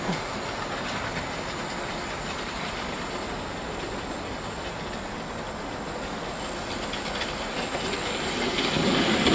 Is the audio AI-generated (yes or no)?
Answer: no